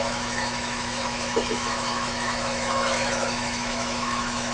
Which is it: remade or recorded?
remade